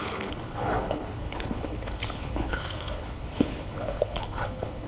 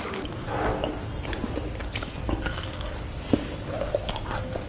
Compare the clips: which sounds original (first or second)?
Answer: second